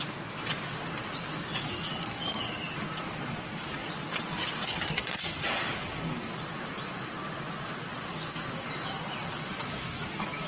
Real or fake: real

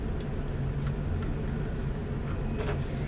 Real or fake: real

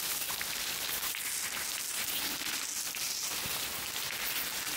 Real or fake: real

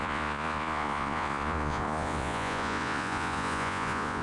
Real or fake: fake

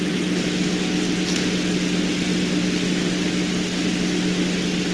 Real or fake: real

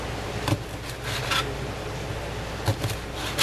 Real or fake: real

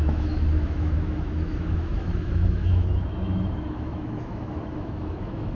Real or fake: fake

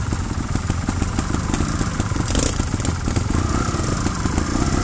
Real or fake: real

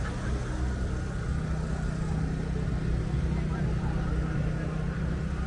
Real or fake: real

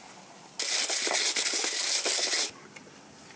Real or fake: real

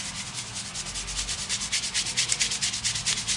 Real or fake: real